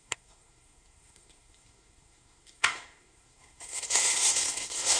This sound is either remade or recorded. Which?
remade